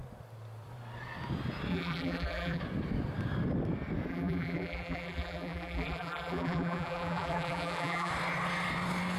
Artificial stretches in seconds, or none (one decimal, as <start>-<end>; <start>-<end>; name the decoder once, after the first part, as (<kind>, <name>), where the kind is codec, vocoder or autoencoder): 1.7-2.6 (vocoder, BigVGAN v2); 4.1-8.1